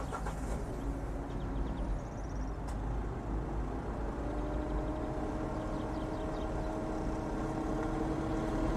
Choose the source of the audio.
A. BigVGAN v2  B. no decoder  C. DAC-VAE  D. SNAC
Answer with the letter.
B